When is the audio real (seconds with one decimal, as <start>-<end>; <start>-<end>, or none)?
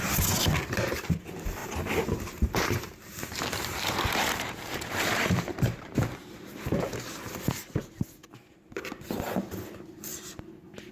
0.0-1.6; 6.7-10.9